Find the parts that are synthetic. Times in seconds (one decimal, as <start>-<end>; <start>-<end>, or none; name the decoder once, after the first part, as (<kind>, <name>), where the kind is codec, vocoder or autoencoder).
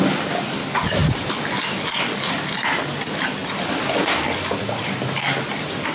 1.0-1.6 (vocoder, BigVGAN v2)